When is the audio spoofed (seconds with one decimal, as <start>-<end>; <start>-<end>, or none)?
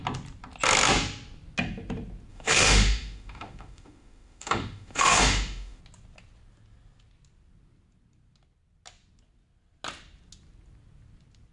2.3-5.8